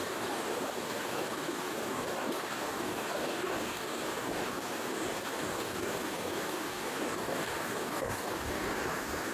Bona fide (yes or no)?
no